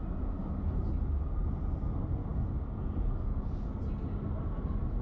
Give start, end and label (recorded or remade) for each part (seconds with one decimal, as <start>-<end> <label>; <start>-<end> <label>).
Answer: 0.0-5.0 recorded